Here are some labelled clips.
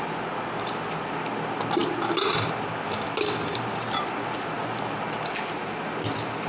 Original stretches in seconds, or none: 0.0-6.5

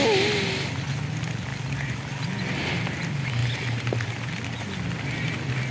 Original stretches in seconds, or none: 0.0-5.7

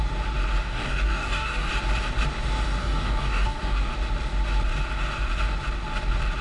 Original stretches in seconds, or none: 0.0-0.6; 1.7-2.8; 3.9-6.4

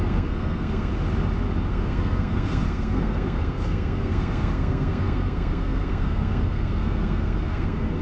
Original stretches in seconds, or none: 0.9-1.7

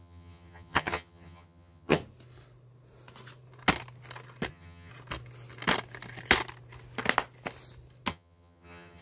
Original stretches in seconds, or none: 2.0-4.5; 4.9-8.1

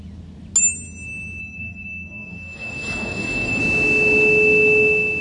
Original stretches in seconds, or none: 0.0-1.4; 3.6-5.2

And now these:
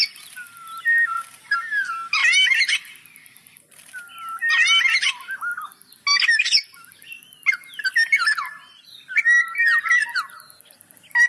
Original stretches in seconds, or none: 0.0-11.3